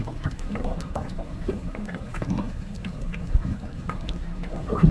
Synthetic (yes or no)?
yes